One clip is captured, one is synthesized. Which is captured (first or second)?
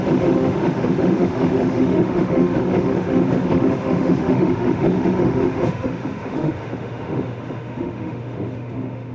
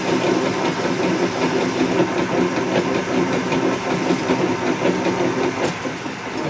second